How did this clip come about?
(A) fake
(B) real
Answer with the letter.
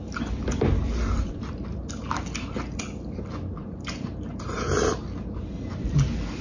B